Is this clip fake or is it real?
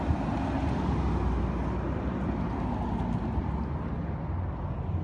real